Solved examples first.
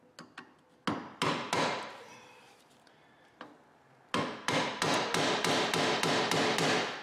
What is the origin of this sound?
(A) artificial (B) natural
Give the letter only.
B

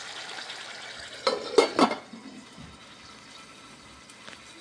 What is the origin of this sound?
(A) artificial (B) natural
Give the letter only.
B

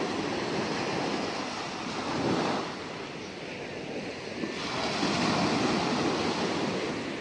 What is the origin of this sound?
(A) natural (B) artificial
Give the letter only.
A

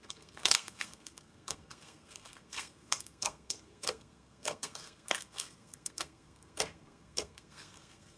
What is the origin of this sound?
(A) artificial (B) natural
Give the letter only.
A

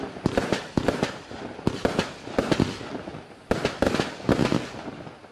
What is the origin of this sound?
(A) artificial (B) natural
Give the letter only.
B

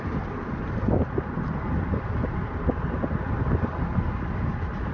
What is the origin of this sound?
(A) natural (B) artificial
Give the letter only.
A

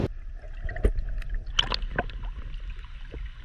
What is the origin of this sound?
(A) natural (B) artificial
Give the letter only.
A